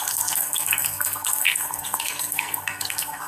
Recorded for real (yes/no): no